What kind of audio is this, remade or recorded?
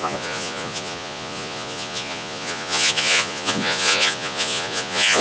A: remade